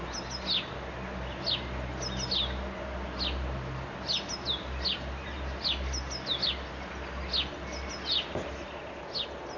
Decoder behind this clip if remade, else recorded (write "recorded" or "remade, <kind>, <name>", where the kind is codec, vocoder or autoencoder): recorded